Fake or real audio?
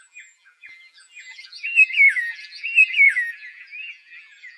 fake